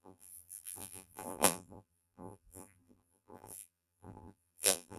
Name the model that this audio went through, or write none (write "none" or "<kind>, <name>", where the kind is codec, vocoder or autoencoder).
vocoder, BigVGAN v2